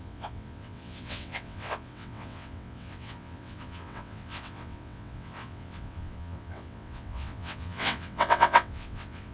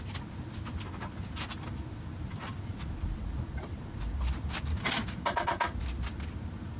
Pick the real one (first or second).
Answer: second